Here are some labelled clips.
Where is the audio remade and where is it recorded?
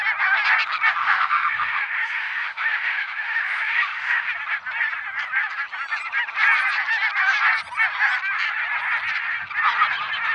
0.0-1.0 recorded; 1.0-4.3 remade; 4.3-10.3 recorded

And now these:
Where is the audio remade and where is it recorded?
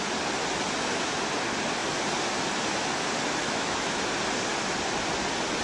0.0-3.4 recorded; 3.4-4.0 remade; 4.0-5.6 recorded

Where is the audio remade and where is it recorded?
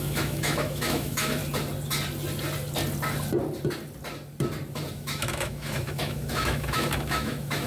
0.0-1.4 remade; 1.4-4.9 recorded; 4.9-7.7 remade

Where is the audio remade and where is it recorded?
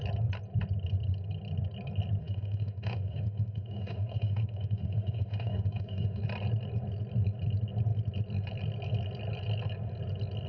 0.0-2.2 recorded; 2.2-6.2 remade; 6.2-10.5 recorded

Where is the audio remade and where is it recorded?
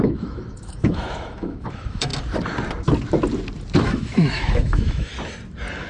0.0-2.1 remade; 2.1-3.8 recorded; 3.8-5.1 remade; 5.1-5.9 recorded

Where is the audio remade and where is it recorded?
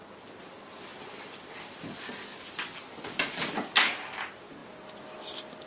0.0-5.7 recorded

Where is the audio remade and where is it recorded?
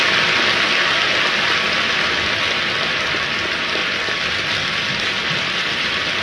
0.0-6.2 recorded